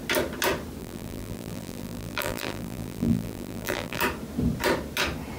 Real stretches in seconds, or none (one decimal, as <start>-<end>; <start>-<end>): 0.0-0.8; 4.0-5.4